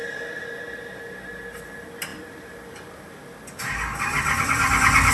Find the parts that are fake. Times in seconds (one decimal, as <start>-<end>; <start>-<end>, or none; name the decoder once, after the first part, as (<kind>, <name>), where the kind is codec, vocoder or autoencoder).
0.0-0.6 (vocoder, BigVGAN v2); 2.1-5.1